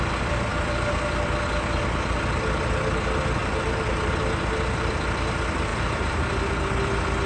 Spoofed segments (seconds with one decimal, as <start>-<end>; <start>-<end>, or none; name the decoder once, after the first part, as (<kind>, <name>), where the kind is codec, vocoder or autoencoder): 3.4-4.1 (vocoder, BigVGAN v2); 5.7-6.2